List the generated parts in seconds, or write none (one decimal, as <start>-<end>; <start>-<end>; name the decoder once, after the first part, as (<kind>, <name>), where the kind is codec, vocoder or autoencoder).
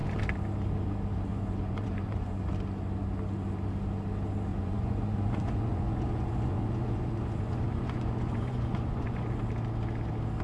1.3-2.4 (vocoder, Vocos); 4.5-9.4